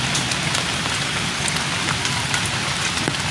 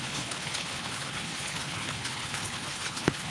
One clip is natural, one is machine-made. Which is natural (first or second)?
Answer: first